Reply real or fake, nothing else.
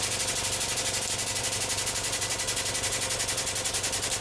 real